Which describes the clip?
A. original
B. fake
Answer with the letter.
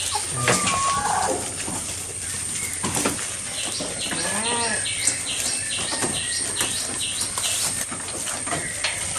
A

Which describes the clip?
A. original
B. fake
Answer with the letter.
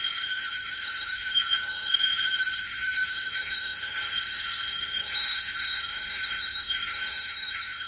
B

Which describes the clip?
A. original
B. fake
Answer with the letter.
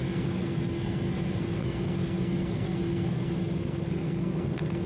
B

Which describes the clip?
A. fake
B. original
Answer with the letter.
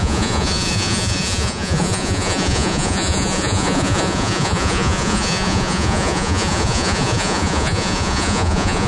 A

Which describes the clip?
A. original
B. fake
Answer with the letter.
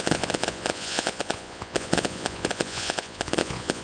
B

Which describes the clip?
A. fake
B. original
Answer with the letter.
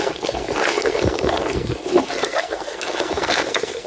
A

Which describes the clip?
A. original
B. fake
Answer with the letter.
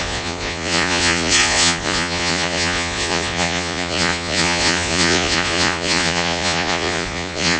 B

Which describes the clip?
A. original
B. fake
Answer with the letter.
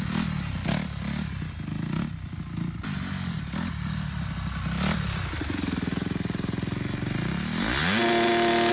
A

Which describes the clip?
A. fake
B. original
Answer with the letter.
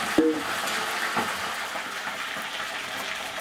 B